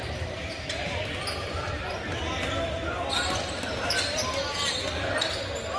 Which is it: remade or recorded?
recorded